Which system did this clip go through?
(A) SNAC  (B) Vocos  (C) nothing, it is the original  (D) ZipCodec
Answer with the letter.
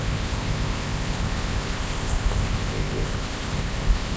D